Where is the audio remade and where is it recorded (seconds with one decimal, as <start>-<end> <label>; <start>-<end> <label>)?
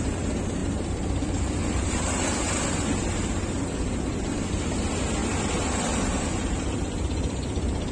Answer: 0.0-0.6 recorded; 0.6-4.5 remade; 4.5-5.2 recorded; 5.2-7.9 remade